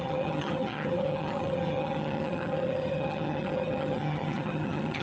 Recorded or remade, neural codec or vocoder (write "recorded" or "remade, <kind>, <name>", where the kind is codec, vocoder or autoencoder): remade, vocoder, HiFi-GAN